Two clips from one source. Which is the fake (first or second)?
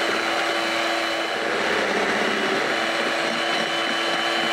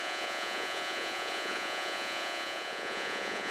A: second